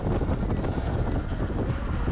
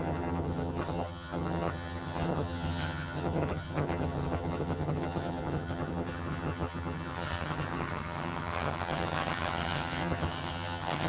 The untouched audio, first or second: first